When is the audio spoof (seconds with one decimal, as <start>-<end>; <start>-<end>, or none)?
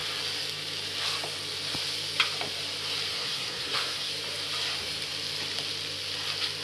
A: 3.1-4.1